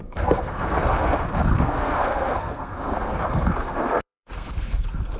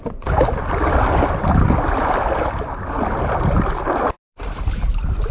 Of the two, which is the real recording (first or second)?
second